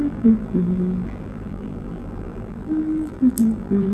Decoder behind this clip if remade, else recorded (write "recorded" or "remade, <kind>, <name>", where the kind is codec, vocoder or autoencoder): remade, vocoder, BigVGAN v2